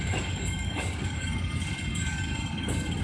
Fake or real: fake